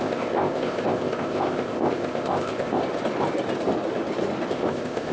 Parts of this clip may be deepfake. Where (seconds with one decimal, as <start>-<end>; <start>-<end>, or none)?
0.0-2.8; 4.5-5.1